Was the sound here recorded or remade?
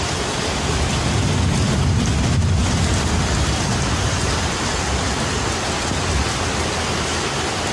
recorded